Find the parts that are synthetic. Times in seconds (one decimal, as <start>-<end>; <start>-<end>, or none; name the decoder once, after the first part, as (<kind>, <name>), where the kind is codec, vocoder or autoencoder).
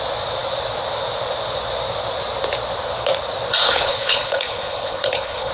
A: 3.6-5.5 (codec, HILCodec)